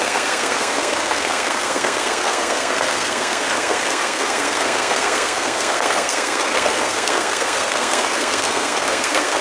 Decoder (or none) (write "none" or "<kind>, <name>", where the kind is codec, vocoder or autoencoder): codec, SNAC